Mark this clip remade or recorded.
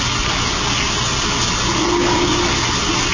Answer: recorded